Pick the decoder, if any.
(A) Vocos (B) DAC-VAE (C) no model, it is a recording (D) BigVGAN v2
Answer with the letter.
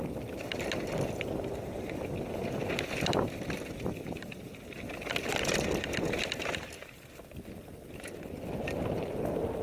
C